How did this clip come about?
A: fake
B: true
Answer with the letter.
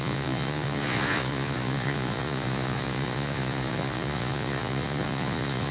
A